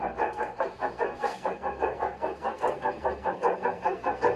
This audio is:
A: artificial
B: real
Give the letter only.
A